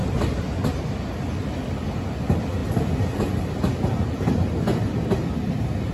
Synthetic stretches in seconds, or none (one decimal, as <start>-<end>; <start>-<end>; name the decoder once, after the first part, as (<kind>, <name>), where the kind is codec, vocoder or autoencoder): none